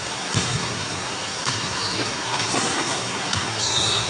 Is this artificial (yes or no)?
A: yes